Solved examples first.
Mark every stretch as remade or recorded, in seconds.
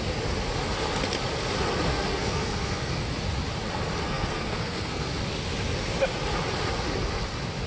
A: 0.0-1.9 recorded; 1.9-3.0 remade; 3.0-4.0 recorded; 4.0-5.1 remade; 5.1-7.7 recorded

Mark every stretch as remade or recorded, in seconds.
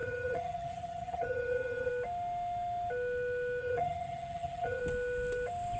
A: 0.0-1.9 remade; 1.9-3.6 recorded; 3.6-4.8 remade; 4.8-5.8 recorded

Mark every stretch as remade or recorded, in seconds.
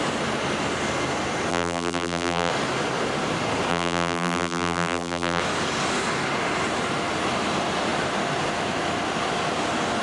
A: 0.0-1.5 recorded; 1.5-2.5 remade; 2.5-3.7 recorded; 3.7-5.4 remade; 5.4-10.0 recorded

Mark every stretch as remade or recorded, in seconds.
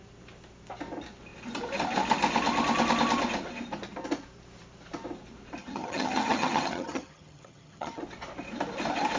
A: 0.0-5.6 recorded; 5.6-8.0 remade; 8.0-9.2 recorded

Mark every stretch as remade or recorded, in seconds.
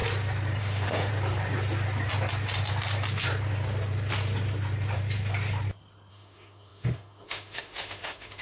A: 0.0-0.6 recorded; 0.6-1.1 remade; 1.1-6.1 recorded; 6.1-8.4 remade